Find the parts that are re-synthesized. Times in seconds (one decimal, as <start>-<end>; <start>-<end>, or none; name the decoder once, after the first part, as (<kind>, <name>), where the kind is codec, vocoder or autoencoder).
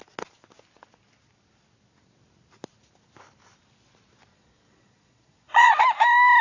4.3-5.7 (vocoder, Vocos)